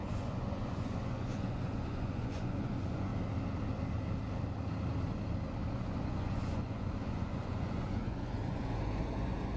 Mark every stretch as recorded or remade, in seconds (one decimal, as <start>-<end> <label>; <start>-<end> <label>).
0.0-3.1 remade; 3.1-5.7 recorded; 5.7-9.6 remade